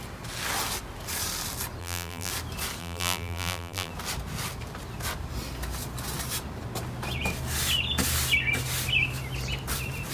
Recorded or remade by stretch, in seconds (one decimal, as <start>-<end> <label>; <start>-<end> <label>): 0.0-1.8 recorded; 1.8-2.3 remade; 2.3-2.8 recorded; 2.8-3.9 remade; 3.9-10.1 recorded